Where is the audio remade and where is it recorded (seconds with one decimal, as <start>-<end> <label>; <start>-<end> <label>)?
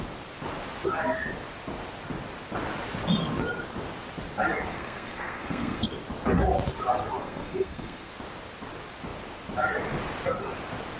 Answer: 0.0-4.7 recorded; 4.7-5.9 remade; 5.9-7.2 recorded; 7.2-8.1 remade; 8.1-11.0 recorded